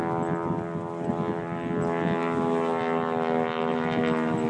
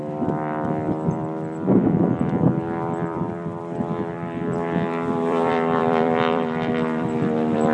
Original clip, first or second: first